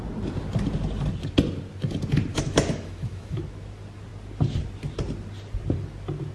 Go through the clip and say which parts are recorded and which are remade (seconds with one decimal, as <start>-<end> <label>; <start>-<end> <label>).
0.0-2.3 recorded; 2.3-3.4 remade; 3.4-6.3 recorded